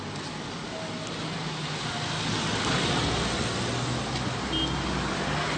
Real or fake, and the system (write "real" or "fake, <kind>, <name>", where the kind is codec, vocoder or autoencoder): real